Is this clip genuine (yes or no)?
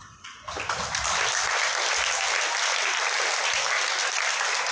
yes